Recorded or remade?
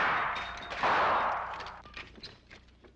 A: recorded